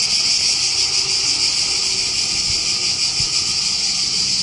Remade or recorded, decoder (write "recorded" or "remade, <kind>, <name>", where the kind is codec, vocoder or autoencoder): recorded